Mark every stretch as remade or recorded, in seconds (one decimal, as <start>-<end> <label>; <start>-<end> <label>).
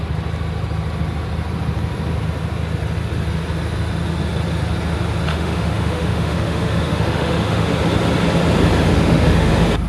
0.0-5.3 recorded; 5.3-7.7 remade; 7.7-8.9 recorded; 8.9-9.5 remade; 9.5-9.9 recorded